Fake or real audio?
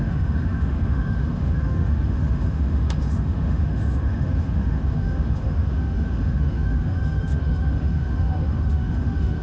fake